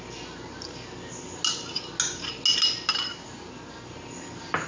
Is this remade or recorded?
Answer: recorded